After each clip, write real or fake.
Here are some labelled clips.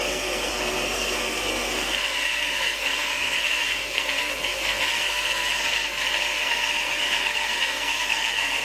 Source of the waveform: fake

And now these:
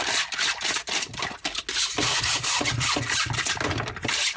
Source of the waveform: real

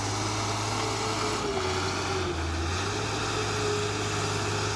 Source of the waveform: real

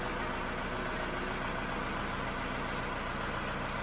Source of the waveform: real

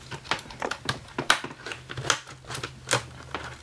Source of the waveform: real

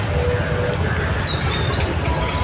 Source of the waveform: real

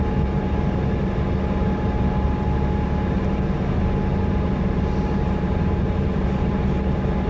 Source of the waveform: real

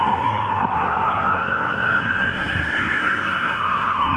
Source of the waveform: fake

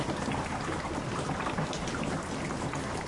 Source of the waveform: real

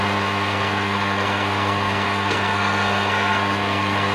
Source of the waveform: fake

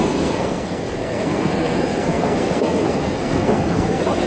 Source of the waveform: fake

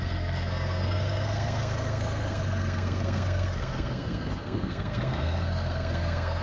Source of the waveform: fake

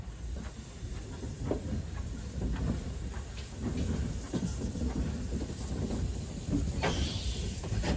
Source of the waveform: real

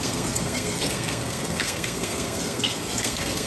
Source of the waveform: fake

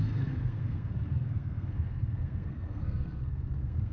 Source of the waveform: fake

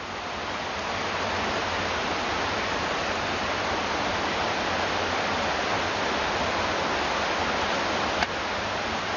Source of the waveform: real